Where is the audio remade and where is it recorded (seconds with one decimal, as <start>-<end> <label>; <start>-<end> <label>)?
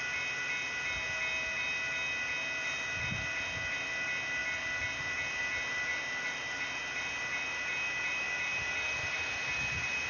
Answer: 0.0-10.1 recorded